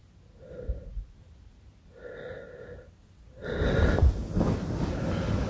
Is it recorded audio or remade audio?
recorded